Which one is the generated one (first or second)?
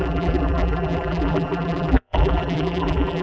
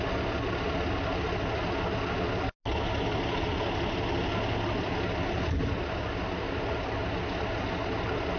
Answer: first